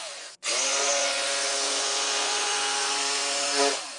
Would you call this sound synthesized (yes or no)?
yes